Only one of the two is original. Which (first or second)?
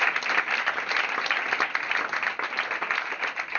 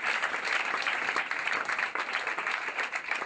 first